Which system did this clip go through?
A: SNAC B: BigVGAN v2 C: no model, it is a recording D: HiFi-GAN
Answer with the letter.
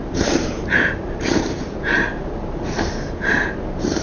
B